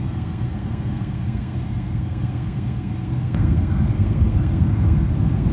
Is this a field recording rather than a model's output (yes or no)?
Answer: no